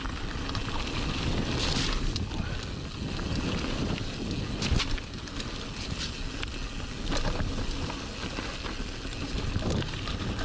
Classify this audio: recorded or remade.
recorded